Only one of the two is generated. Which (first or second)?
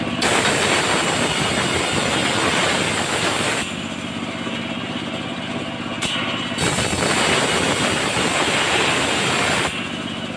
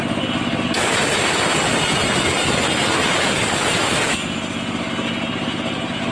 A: first